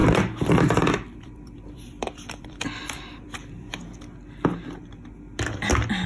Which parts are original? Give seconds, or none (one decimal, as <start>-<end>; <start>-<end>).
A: 3.7-6.1